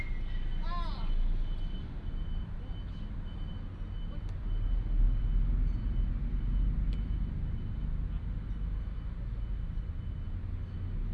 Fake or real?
real